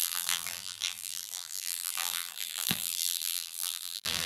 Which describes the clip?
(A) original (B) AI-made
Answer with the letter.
B